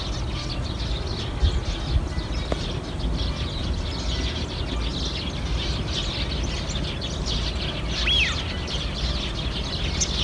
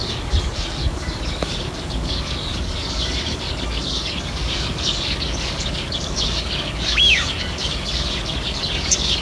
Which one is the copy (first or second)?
second